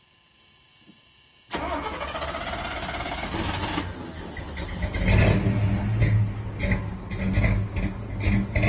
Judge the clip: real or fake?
real